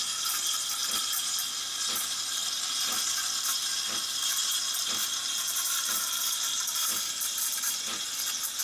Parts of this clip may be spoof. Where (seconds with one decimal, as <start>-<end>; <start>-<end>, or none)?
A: 3.2-7.8